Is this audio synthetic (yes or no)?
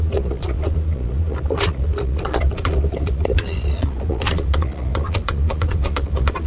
yes